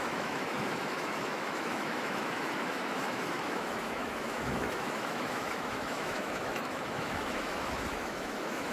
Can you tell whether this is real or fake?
fake